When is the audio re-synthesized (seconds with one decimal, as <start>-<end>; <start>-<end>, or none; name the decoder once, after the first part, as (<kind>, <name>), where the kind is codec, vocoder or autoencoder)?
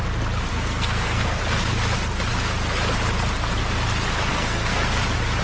0.5-1.4 (codec, SNAC); 4.3-5.0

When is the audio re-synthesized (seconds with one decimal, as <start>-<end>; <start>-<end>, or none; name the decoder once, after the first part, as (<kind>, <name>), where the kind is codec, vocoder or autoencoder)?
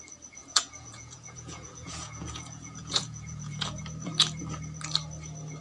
0.4-3.8 (vocoder, Vocos)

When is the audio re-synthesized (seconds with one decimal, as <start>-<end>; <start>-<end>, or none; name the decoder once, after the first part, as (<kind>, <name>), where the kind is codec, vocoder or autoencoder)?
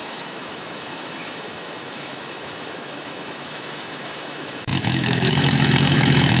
0.0-6.4 (autoencoder, DAC-VAE)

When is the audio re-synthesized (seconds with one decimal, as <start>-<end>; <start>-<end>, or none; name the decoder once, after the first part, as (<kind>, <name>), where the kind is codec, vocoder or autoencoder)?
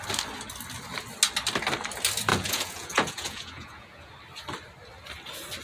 2.3-4.1 (vocoder, Vocos)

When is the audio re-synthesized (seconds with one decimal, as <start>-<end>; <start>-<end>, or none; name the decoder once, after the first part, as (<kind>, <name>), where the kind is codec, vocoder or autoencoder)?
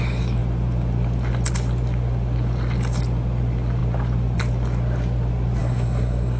5.6-6.4 (codec, SNAC)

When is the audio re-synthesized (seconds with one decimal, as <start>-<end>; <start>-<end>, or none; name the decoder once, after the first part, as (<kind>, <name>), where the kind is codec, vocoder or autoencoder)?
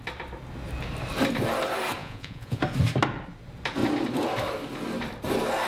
2.0-2.6 (vocoder, Vocos)